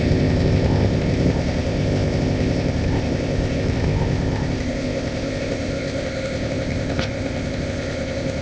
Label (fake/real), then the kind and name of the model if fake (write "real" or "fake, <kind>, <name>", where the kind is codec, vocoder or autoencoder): fake, codec, ZipCodec